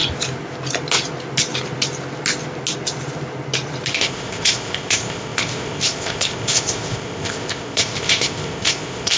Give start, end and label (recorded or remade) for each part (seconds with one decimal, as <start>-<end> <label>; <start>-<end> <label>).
0.0-3.9 recorded; 3.9-9.2 remade